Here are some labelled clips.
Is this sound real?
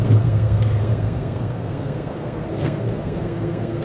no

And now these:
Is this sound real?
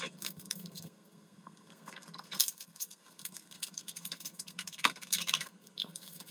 no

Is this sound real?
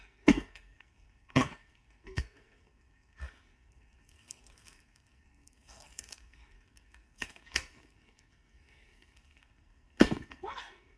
no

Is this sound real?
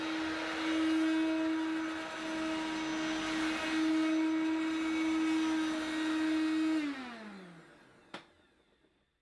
yes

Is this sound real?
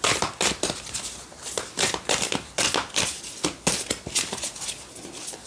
yes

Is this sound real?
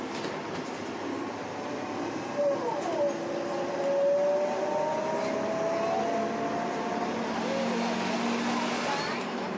yes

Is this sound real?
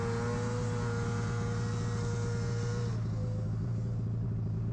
yes